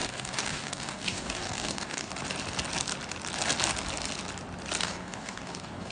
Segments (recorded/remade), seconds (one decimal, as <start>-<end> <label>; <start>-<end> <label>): 0.0-2.1 remade; 2.1-4.8 recorded; 4.8-5.9 remade